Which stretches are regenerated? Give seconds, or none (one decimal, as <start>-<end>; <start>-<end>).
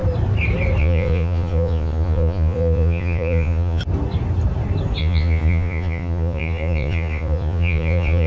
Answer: 0.8-3.8; 5.0-8.3